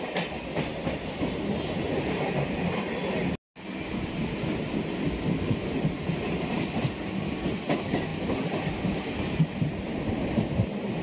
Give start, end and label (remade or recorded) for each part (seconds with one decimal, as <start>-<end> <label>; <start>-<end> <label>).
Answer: 0.0-11.0 recorded